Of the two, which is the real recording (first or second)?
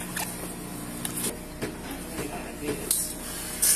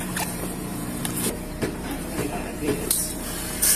first